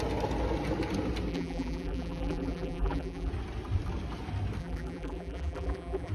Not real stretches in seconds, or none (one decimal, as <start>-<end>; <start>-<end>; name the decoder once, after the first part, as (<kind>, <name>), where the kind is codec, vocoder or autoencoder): 1.3-3.3 (vocoder, BigVGAN v2); 4.6-6.1